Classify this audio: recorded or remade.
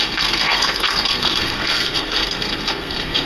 remade